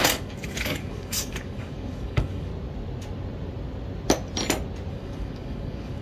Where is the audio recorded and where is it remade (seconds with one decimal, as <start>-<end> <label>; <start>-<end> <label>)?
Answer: 0.0-2.5 remade; 2.5-4.9 recorded; 4.9-6.0 remade